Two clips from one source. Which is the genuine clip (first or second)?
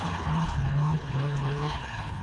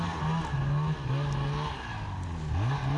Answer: second